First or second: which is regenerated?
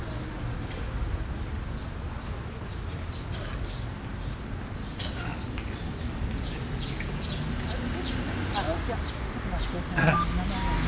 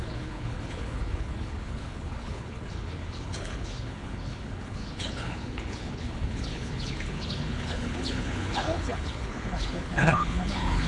second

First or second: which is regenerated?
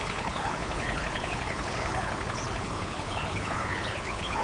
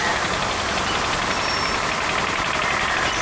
first